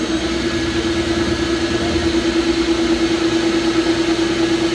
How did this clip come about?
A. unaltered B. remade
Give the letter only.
A